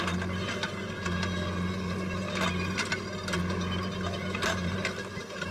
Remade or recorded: recorded